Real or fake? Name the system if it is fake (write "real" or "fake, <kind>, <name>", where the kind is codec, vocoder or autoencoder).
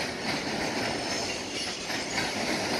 real